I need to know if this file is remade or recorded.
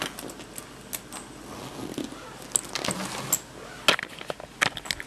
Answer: recorded